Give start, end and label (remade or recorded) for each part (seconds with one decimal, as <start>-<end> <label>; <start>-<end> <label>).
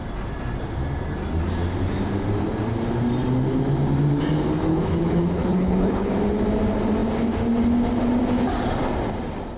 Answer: 0.0-4.7 recorded; 4.7-6.1 remade; 6.1-9.6 recorded